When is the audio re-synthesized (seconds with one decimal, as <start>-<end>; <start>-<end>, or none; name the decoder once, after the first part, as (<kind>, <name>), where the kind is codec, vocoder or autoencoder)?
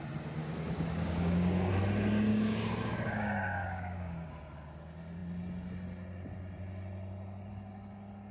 0.4-1.7 (codec, DAC); 2.3-4.3